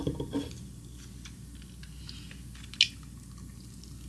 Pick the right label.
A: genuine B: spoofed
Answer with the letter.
A